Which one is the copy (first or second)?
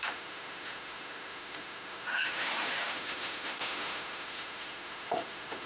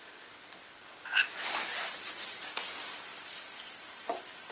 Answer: first